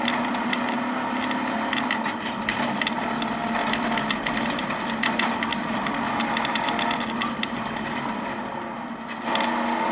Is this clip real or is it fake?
real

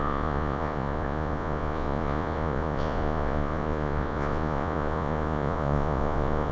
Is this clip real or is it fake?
fake